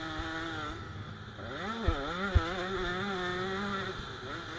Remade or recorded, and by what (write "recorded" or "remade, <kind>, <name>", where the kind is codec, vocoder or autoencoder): recorded